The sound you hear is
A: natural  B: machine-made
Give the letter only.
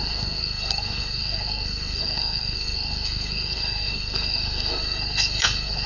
B